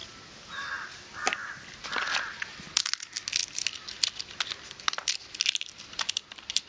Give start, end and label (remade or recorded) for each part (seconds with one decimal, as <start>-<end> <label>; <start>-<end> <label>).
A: 0.0-6.7 recorded